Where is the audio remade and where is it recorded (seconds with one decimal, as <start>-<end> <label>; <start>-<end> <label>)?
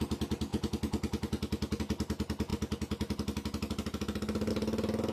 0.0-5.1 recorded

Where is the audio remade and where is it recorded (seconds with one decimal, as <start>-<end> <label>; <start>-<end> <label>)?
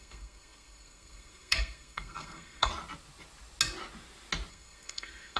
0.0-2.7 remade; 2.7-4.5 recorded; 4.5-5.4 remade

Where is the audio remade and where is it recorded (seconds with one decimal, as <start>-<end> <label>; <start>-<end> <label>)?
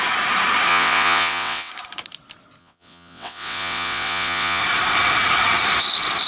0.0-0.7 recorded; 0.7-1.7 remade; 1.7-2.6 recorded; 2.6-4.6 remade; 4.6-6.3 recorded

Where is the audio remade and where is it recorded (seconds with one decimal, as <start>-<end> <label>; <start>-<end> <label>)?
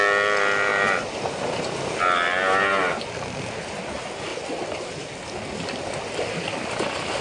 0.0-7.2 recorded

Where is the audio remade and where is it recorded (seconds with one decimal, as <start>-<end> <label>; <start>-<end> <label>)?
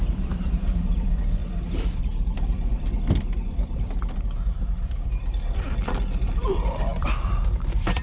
0.0-1.4 remade; 1.4-2.0 recorded; 2.0-8.0 remade